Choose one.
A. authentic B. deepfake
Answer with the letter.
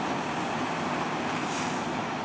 A